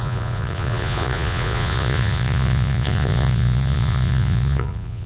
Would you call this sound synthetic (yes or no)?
yes